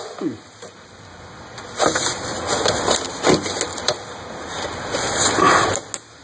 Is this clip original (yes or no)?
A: yes